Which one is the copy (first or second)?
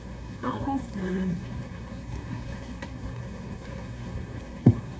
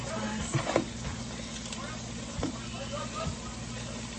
first